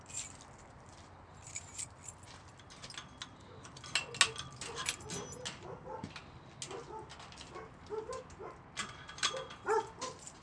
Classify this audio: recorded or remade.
recorded